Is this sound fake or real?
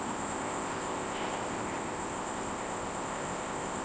fake